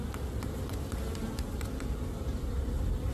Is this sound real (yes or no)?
yes